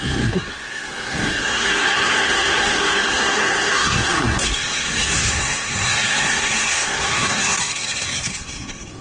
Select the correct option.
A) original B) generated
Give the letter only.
B